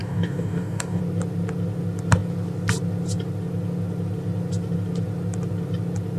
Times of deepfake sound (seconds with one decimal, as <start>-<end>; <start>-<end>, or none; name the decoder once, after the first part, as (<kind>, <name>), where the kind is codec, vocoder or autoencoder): 0.0-1.0 (codec, DAC)